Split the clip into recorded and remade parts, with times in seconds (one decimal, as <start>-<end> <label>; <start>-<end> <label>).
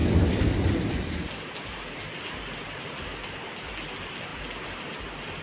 0.0-5.4 recorded